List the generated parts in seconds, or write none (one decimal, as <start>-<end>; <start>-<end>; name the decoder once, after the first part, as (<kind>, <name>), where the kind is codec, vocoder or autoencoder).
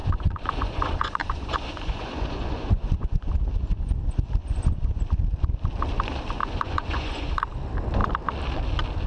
0.0-3.3 (vocoder, Vocos); 4.4-5.0; 6.4-7.4